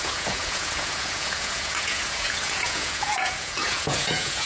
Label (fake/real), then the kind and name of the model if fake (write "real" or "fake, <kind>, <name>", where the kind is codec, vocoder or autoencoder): fake, vocoder, Vocos